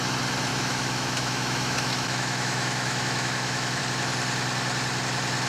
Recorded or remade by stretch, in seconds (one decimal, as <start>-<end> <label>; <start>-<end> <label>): 0.0-0.5 recorded; 0.5-3.8 remade; 3.8-5.5 recorded